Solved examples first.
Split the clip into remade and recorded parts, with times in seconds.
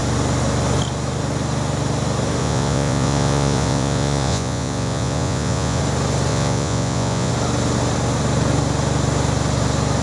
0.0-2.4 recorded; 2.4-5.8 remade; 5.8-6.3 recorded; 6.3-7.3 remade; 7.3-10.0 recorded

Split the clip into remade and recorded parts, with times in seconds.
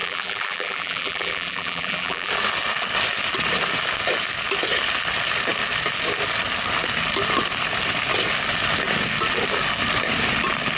0.0-2.3 remade; 2.3-10.8 recorded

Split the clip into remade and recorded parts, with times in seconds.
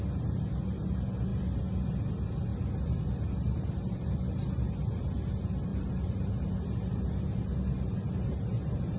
0.0-5.7 recorded; 5.7-6.3 remade; 6.3-9.0 recorded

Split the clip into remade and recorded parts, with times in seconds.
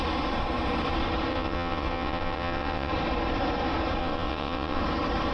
0.0-1.3 recorded; 1.3-2.9 remade; 2.9-4.0 recorded; 4.0-4.8 remade; 4.8-5.3 recorded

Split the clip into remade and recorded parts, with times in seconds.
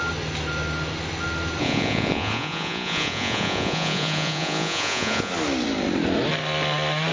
0.0-1.6 recorded; 1.6-5.3 remade; 5.3-7.1 recorded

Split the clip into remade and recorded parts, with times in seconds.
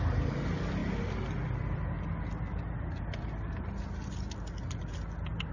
0.0-5.5 recorded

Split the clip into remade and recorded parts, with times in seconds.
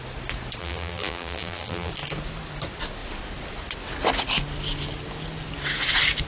0.0-0.6 recorded; 0.6-1.9 remade; 1.9-6.3 recorded